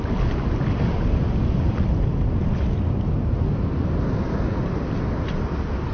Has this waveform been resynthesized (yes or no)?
no